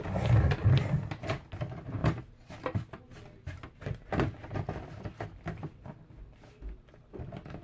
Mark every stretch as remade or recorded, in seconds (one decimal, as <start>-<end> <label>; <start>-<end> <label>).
0.0-7.6 recorded